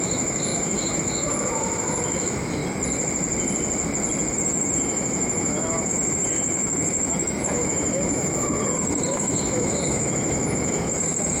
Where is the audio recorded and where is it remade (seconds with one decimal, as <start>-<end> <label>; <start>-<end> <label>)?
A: 0.0-2.6 remade; 2.6-4.3 recorded; 4.3-11.4 remade

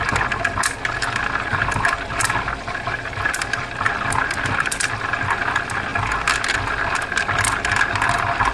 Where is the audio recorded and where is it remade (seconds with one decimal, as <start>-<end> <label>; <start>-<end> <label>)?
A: 0.0-8.5 recorded

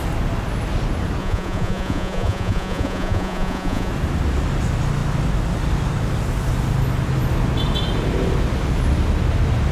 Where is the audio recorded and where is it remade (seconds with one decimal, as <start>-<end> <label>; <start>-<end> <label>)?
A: 0.0-1.2 recorded; 1.2-3.9 remade; 3.9-9.7 recorded